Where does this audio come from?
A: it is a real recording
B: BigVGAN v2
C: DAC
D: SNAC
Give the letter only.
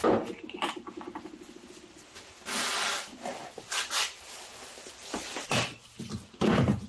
A